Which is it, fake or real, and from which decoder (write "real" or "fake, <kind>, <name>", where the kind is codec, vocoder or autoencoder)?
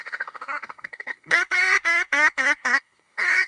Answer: fake, codec, SNAC